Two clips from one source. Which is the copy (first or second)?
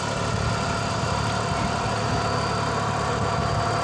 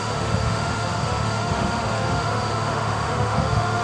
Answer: second